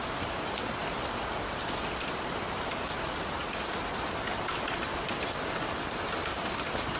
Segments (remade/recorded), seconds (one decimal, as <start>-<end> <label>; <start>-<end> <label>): 0.0-7.0 recorded